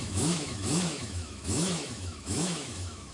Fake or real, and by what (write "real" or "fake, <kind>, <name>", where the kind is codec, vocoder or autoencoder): fake, autoencoder, DAC-VAE